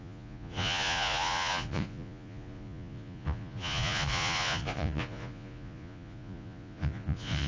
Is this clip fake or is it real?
fake